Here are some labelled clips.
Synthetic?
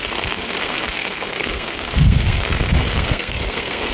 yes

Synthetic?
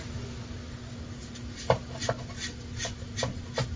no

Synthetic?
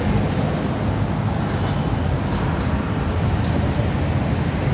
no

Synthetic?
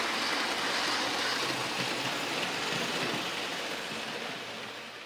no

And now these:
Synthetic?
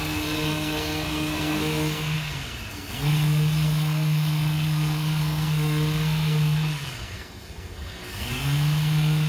yes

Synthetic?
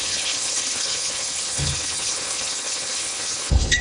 yes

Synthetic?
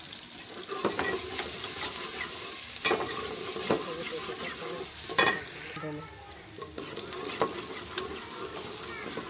no